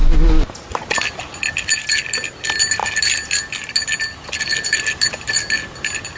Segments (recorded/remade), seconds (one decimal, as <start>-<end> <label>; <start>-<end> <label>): 0.0-6.2 recorded